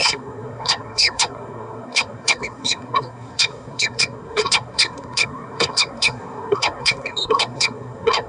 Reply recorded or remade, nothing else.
remade